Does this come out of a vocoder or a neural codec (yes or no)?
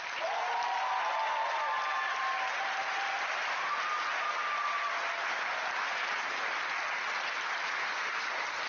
no